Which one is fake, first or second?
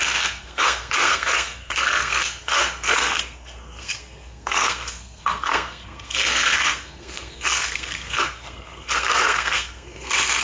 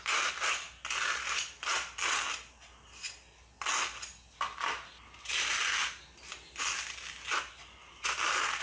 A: first